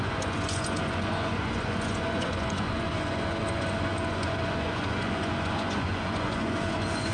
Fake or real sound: fake